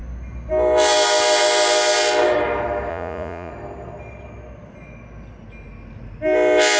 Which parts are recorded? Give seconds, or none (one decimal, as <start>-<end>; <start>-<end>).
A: 0.0-2.9; 3.5-6.8